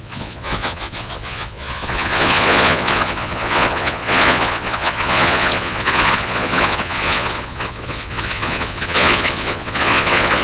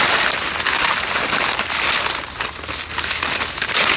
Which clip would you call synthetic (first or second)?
first